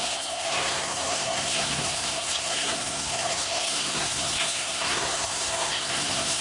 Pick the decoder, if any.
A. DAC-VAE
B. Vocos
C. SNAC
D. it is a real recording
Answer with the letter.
C